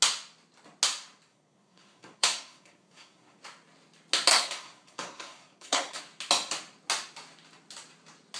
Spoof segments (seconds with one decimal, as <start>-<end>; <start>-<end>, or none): 1.3-3.4; 4.3-6.0